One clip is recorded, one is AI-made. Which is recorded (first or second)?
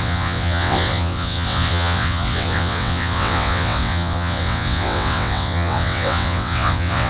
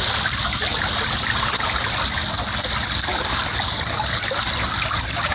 second